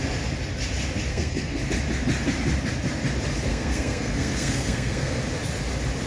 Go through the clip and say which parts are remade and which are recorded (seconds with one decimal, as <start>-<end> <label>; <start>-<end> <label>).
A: 0.0-1.1 recorded; 1.1-1.6 remade; 1.6-3.5 recorded; 3.5-5.2 remade; 5.2-6.1 recorded